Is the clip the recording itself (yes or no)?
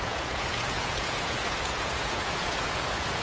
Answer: no